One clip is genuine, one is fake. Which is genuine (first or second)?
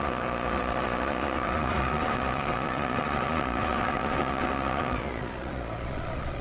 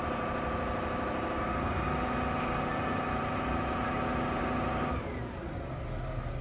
second